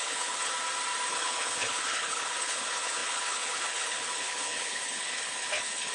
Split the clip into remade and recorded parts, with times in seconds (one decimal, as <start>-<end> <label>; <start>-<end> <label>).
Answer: 0.0-0.5 remade; 0.5-1.1 recorded; 1.1-5.9 remade